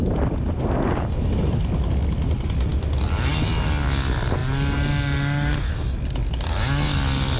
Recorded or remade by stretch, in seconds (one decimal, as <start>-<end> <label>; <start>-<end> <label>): 0.0-7.4 recorded